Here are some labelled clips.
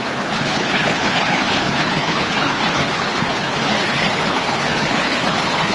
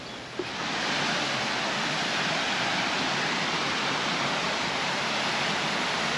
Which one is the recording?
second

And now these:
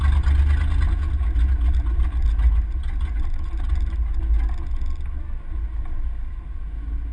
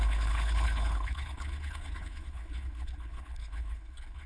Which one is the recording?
first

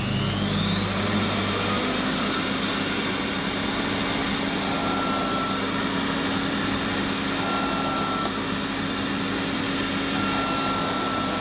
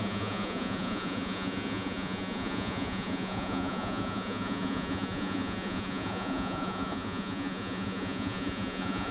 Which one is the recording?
first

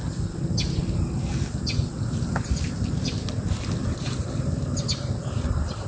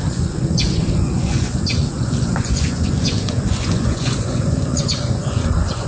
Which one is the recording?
first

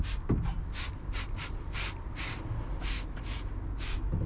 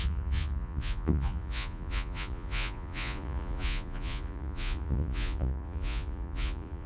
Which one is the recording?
first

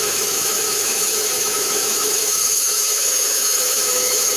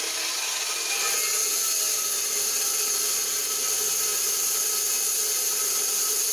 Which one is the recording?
second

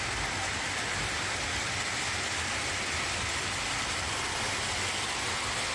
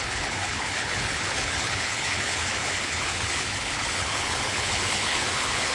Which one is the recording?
first